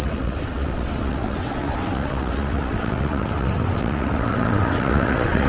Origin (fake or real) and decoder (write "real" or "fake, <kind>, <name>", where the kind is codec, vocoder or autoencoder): fake, vocoder, WaveNeXt